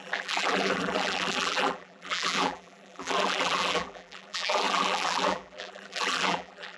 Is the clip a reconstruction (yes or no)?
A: yes